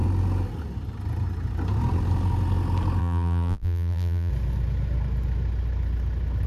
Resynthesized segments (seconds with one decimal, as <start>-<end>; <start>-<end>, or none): 3.0-4.3